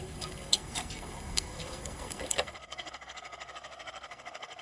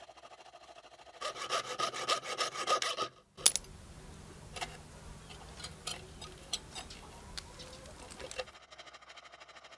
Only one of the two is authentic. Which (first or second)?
second